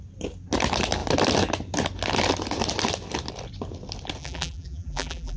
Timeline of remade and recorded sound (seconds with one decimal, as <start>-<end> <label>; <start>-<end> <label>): 0.0-4.2 recorded; 4.2-5.4 remade